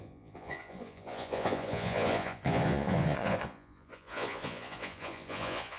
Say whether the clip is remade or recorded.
remade